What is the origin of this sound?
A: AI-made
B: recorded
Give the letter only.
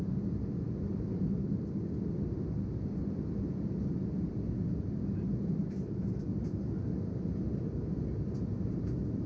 B